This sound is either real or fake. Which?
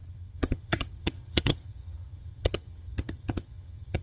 fake